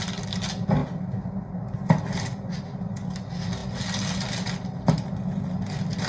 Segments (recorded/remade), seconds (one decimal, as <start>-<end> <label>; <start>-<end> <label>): 0.0-6.1 recorded